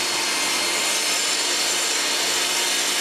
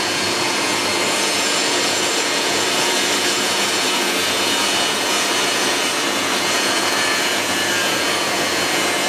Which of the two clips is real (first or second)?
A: first